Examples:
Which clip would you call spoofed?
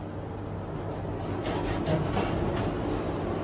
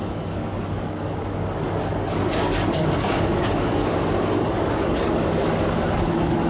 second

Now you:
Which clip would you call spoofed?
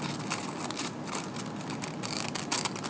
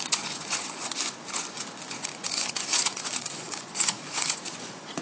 second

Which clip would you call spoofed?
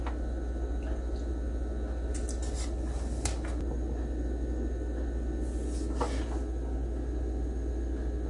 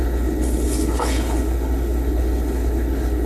second